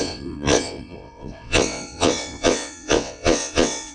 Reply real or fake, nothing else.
fake